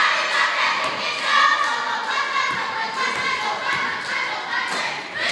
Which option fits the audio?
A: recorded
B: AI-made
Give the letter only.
A